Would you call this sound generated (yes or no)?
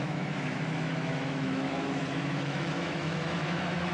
yes